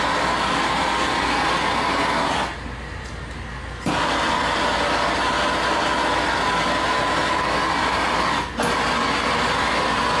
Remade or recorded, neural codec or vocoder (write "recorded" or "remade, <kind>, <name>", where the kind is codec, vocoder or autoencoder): recorded